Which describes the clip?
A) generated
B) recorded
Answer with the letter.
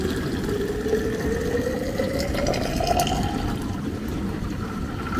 B